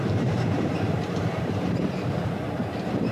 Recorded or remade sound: remade